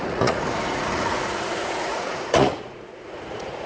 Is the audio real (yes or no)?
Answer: no